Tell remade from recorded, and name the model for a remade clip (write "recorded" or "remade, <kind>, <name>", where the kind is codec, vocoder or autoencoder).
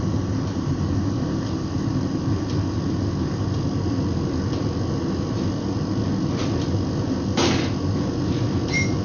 recorded